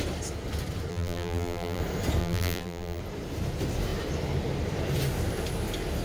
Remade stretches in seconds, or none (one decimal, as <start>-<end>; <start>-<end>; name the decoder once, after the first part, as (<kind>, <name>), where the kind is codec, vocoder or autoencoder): 0.9-1.8 (vocoder, BigVGAN v2); 2.2-3.0